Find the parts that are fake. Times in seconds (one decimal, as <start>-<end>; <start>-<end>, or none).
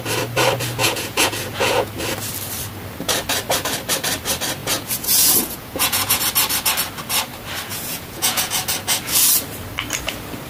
0.8-1.9; 4.6-6.2; 7.7-8.5